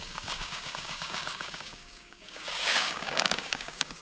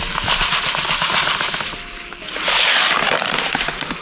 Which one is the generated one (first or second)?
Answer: first